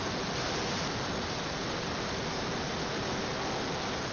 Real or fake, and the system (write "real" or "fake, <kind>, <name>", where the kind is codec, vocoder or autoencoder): real